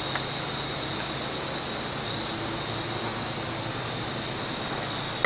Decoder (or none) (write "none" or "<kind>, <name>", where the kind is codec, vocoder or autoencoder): none